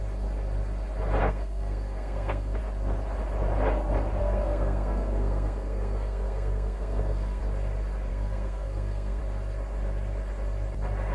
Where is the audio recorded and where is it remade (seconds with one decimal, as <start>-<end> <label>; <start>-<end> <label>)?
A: 0.0-1.2 recorded; 1.2-2.6 remade; 2.6-4.2 recorded; 4.2-7.4 remade; 7.4-8.1 recorded; 8.1-9.2 remade; 9.2-11.1 recorded